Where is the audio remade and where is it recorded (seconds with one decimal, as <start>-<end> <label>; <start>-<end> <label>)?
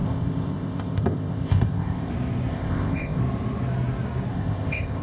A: 0.0-2.1 remade; 2.1-2.5 recorded; 2.5-3.2 remade; 3.2-4.3 recorded; 4.3-5.0 remade